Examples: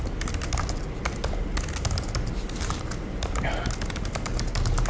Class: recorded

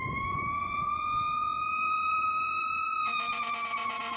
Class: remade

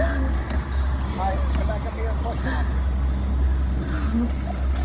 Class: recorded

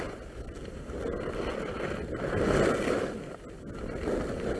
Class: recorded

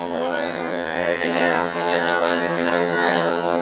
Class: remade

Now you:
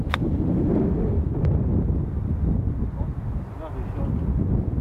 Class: remade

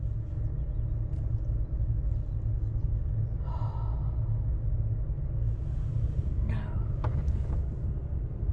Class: recorded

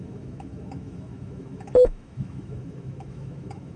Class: remade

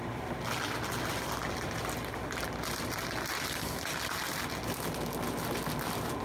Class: recorded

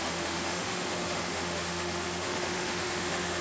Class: remade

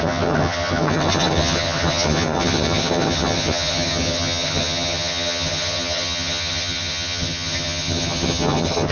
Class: remade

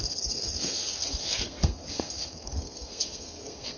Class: remade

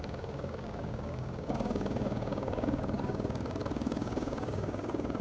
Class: remade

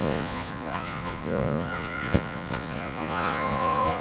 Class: remade